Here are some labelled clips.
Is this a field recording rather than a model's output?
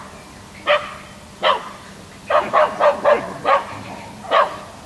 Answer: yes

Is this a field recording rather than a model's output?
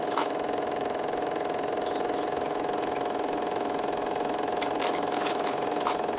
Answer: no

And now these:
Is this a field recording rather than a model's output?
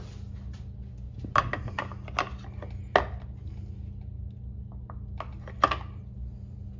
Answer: yes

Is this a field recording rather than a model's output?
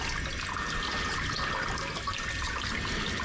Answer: yes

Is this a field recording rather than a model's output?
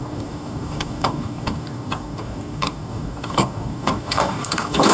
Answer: no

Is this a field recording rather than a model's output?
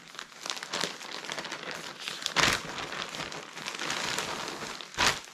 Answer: yes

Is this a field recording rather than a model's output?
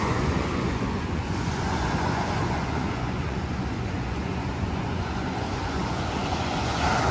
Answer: no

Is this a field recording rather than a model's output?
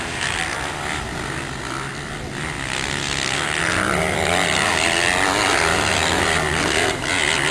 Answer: yes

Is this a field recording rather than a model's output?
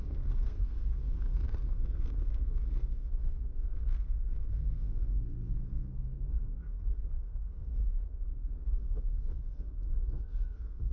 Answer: no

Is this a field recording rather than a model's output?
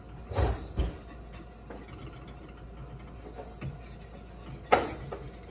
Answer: yes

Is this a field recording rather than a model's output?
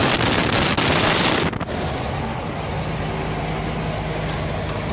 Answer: yes